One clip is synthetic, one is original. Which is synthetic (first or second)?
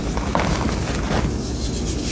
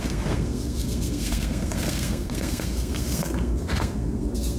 second